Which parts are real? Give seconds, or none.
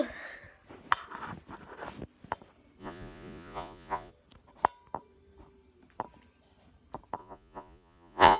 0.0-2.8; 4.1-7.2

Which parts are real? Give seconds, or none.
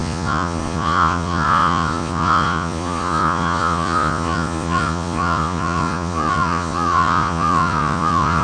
none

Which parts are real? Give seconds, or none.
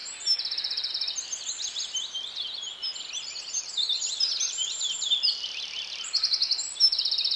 0.0-2.8; 6.2-7.4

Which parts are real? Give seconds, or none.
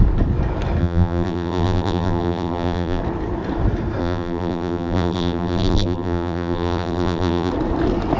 0.0-0.8; 3.0-4.0; 7.5-8.2